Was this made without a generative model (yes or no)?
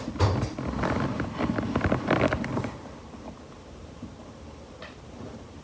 yes